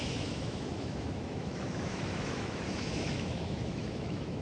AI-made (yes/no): yes